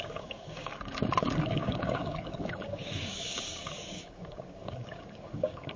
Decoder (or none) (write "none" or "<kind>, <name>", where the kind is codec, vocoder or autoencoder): codec, DAC